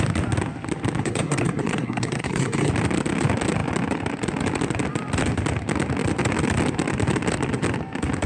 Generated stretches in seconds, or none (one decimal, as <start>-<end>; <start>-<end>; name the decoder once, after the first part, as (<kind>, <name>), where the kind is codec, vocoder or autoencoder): 1.0-2.7 (codec, SNAC)